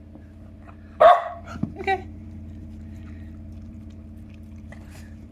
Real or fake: fake